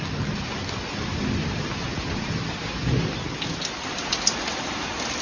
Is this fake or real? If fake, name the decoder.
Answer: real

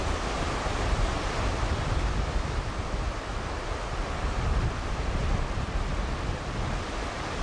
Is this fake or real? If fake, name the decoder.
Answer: real